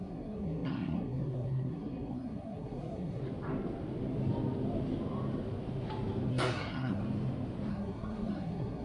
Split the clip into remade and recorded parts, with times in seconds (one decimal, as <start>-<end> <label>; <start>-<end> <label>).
0.0-3.2 remade; 3.2-6.3 recorded; 6.3-7.0 remade; 7.0-7.7 recorded; 7.7-8.8 remade